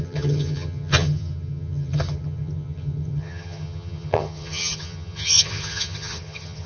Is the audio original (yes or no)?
no